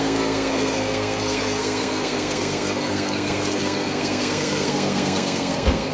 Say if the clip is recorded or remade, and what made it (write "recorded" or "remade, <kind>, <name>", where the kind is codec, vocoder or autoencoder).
remade, codec, SNAC